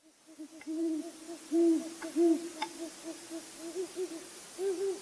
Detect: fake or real real